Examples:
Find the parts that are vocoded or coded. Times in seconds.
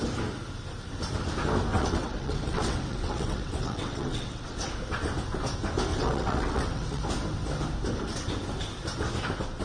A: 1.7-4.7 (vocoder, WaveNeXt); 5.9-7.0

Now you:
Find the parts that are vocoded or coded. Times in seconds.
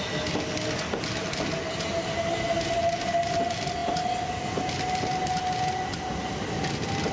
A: none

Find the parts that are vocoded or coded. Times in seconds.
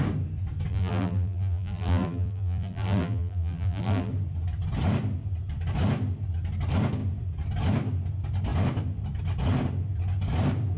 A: 0.7-4.1 (vocoder, BigVGAN v2)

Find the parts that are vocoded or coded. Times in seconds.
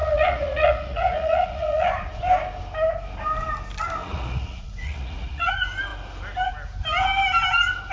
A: 0.0-1.9 (vocoder, Vocos); 4.0-5.5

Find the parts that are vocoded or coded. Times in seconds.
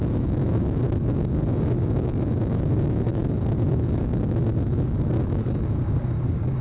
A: 0.0-6.6 (codec, DAC)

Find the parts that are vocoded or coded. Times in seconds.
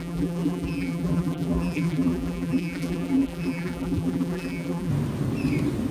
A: 0.0-4.9 (vocoder, BigVGAN v2)